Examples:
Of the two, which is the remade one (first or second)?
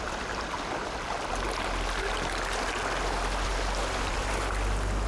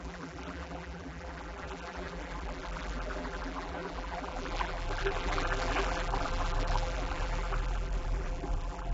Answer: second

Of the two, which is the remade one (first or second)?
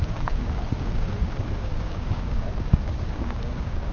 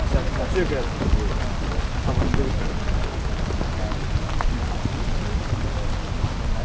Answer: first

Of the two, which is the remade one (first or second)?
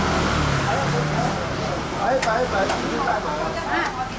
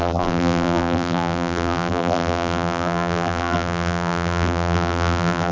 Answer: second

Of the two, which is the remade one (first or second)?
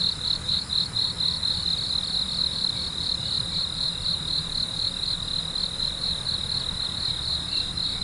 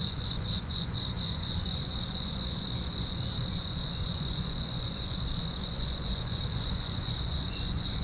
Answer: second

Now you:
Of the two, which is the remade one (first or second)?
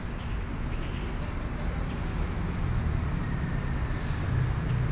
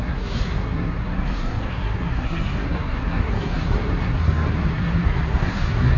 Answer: second